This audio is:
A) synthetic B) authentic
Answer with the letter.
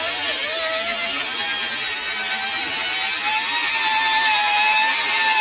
B